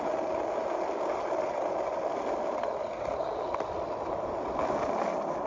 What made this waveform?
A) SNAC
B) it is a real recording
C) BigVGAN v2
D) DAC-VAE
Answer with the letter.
B